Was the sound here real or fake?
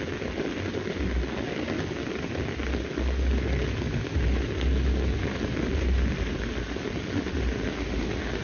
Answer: real